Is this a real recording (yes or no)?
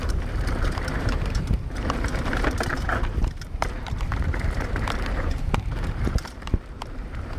no